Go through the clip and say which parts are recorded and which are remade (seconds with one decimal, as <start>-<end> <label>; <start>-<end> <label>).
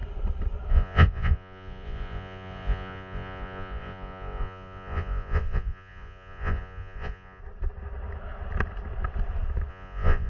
0.0-0.7 recorded; 0.7-7.4 remade; 7.4-9.7 recorded; 9.7-10.3 remade